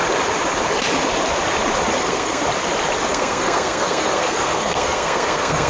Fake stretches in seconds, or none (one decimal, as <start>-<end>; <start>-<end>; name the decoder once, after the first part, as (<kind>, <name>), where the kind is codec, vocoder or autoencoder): 2.0-2.4 (codec, SNAC); 3.1-5.7